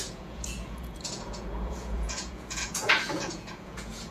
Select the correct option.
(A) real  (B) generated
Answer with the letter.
B